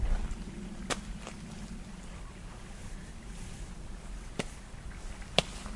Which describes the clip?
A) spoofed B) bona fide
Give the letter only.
B